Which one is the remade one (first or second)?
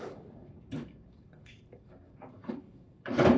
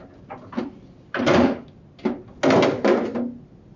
first